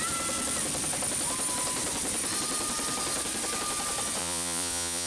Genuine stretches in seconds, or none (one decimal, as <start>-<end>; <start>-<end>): 0.0-4.2